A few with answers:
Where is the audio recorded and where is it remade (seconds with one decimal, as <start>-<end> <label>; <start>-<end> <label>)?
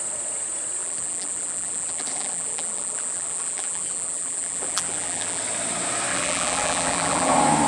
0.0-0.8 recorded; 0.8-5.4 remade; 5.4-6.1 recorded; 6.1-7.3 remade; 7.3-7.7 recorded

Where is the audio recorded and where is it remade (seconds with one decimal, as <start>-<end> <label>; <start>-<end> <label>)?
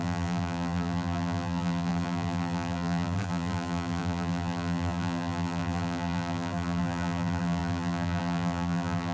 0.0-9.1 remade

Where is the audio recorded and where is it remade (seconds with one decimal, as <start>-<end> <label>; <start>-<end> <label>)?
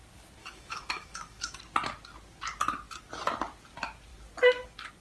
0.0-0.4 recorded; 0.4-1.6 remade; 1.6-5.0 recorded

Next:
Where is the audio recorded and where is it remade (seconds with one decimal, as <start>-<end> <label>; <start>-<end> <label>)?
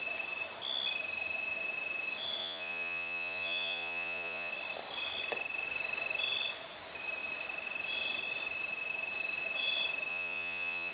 0.0-2.4 recorded; 2.4-4.5 remade; 4.5-10.1 recorded; 10.1-10.9 remade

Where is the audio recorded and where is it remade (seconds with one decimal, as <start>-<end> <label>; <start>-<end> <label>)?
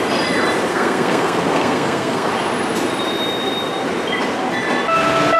0.0-0.7 recorded; 0.7-2.3 remade; 2.3-5.4 recorded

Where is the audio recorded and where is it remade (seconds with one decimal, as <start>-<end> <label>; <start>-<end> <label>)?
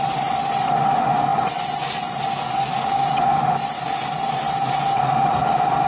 0.0-5.9 recorded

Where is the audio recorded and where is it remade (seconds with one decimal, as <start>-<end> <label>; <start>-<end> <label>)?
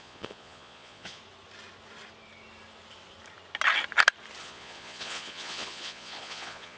0.0-1.2 remade; 1.2-4.4 recorded; 4.4-6.8 remade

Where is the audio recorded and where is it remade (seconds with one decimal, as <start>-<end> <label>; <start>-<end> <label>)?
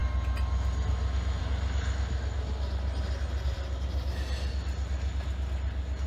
0.0-6.1 recorded